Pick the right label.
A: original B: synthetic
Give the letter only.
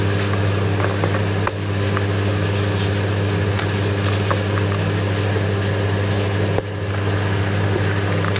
A